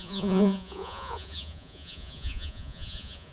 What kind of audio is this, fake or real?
fake